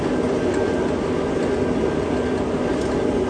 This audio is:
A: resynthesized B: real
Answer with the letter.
B